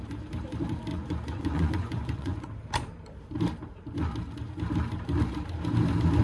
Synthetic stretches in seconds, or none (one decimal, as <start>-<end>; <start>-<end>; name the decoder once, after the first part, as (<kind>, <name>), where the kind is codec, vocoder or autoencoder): 0.9-2.5 (vocoder, Vocos)